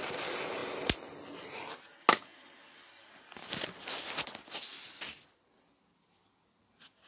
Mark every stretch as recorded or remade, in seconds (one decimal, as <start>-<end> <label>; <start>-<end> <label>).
0.0-7.1 recorded